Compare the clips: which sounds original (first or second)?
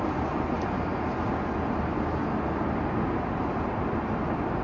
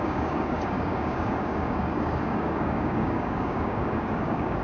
first